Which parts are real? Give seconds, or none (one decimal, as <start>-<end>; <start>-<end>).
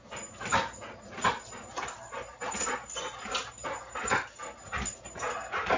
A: 0.0-5.8